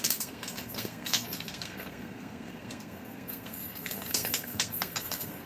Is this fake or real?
fake